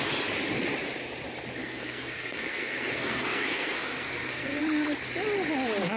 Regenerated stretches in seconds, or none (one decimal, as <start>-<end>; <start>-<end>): 1.6-4.6